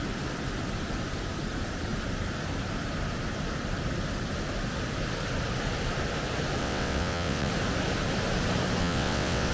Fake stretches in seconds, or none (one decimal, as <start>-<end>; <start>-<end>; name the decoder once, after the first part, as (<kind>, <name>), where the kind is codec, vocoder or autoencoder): 6.6-7.5 (vocoder, WaveNeXt); 8.8-9.5